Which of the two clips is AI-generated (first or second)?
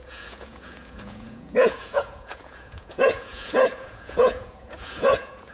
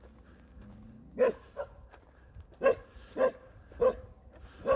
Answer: first